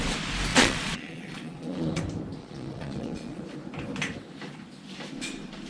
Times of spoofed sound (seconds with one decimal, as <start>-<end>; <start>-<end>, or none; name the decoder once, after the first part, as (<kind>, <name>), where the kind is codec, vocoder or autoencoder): 0.5-2.0 (vocoder, Vocos); 2.4-3.4

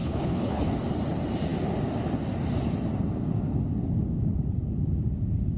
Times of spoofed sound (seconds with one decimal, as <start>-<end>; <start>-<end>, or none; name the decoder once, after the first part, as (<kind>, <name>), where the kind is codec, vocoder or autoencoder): 0.0-0.7 (codec, HILCodec)

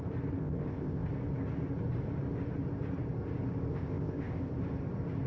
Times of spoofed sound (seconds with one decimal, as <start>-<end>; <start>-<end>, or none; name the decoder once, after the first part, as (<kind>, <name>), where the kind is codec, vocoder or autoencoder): 0.4-1.1 (codec, ZipCodec); 3.7-4.5

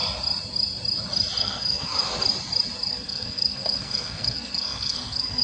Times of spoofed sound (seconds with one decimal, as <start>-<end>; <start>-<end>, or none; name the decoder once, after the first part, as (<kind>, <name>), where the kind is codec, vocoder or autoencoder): 1.4-2.0 (codec, SNAC); 2.9-5.4

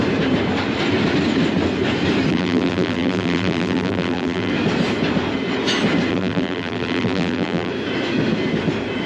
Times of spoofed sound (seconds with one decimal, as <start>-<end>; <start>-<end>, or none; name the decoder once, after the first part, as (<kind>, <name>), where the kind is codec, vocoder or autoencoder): 2.3-4.5 (vocoder, BigVGAN v2); 6.1-7.7